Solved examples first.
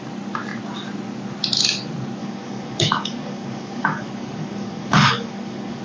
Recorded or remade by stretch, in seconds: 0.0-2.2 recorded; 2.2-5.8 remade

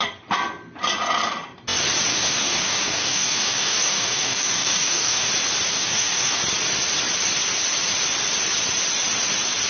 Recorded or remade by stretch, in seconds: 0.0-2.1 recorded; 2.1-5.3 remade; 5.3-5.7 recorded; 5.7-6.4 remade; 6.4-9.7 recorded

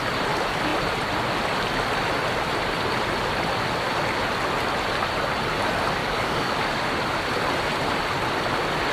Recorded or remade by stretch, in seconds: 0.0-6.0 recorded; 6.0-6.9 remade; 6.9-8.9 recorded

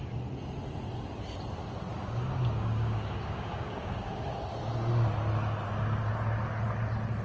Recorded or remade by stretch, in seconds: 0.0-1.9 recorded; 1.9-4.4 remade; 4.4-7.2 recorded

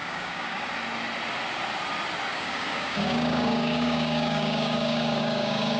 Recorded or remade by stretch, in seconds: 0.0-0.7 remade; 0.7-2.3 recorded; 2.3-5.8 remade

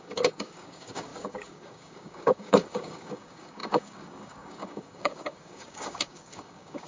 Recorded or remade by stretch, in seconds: 0.0-6.9 remade